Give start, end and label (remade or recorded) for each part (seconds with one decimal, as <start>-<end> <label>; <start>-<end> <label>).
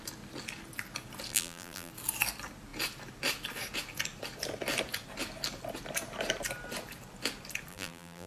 0.0-1.3 recorded; 1.3-1.9 remade; 1.9-7.7 recorded; 7.7-8.3 remade